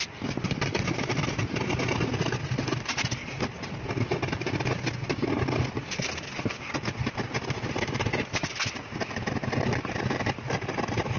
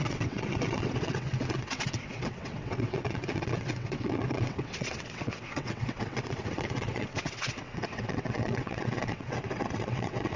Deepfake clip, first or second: second